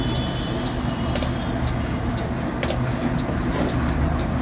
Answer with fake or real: real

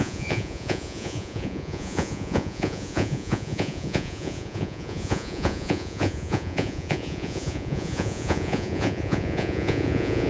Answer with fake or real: fake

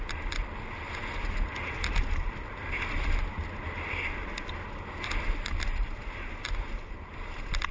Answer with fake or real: real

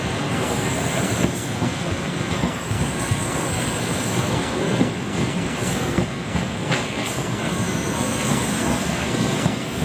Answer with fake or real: fake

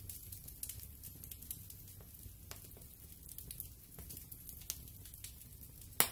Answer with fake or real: real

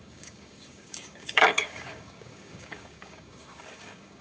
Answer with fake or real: fake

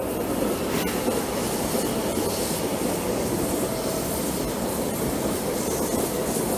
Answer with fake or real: real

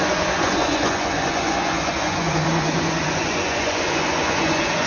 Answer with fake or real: fake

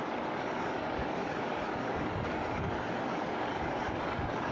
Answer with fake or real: fake